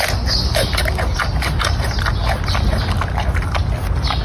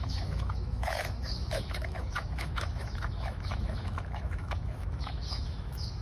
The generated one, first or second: second